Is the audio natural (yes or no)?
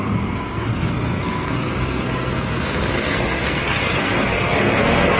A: no